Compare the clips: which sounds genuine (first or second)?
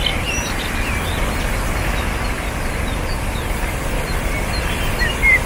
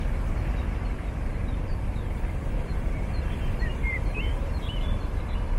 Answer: first